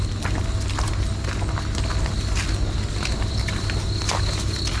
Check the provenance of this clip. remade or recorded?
recorded